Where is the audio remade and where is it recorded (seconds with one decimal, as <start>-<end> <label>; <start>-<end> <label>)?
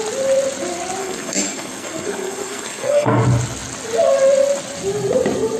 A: 0.0-1.0 recorded; 1.0-3.2 remade; 3.2-5.6 recorded